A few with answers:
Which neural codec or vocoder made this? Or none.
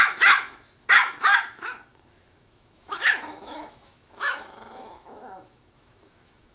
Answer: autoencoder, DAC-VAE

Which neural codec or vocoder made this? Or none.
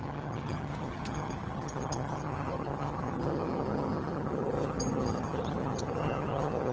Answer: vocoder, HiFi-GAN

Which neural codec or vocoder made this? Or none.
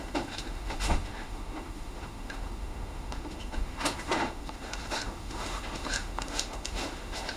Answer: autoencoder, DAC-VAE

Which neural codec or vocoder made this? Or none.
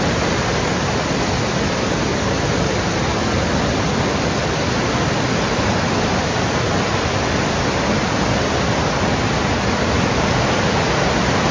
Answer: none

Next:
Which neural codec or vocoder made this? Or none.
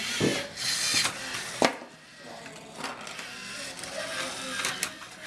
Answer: none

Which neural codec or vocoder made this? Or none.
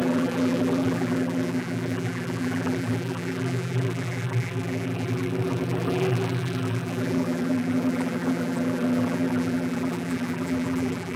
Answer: vocoder, BigVGAN v2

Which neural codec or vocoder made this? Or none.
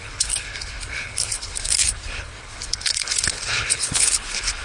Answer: codec, HILCodec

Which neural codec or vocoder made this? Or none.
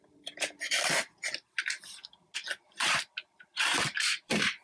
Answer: vocoder, BigVGAN v2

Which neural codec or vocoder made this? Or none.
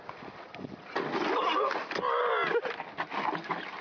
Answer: none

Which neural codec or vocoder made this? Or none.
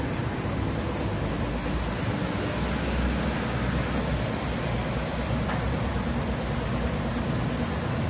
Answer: none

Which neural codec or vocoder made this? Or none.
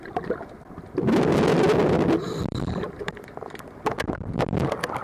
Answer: none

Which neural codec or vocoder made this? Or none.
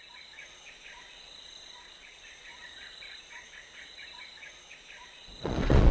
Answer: vocoder, Vocos